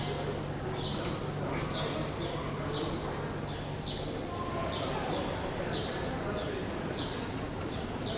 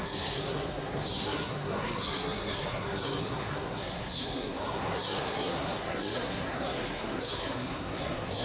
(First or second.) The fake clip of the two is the second